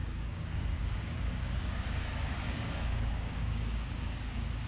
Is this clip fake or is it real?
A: fake